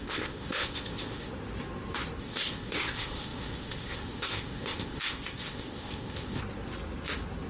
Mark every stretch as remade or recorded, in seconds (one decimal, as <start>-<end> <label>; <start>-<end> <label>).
0.0-1.3 remade; 1.3-2.2 recorded; 2.2-6.4 remade; 6.4-7.5 recorded